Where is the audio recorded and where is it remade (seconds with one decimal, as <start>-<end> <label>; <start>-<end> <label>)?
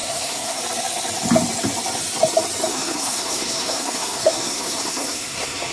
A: 0.0-0.6 remade; 0.6-2.7 recorded; 2.7-5.7 remade